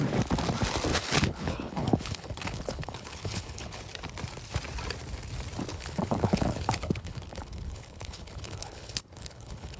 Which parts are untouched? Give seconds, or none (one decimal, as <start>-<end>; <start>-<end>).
0.0-0.9; 3.8-5.7